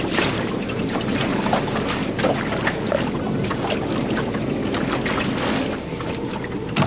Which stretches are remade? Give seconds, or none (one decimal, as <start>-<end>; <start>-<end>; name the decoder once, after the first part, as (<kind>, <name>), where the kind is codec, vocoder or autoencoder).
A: 0.0-2.0 (vocoder, BigVGAN v2); 6.1-6.9